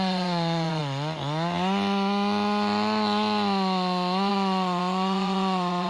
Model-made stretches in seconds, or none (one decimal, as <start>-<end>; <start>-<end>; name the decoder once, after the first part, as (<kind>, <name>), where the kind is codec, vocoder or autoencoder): 0.0-0.8 (vocoder, Vocos); 4.3-5.9